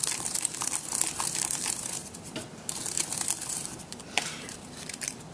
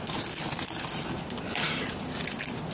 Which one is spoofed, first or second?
first